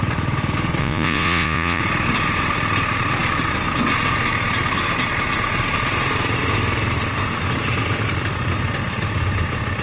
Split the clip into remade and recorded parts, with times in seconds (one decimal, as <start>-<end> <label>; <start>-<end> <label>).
0.0-0.8 recorded; 0.8-1.8 remade; 1.8-9.8 recorded